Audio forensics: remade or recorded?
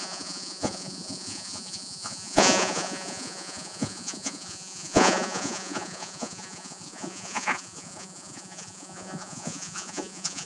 remade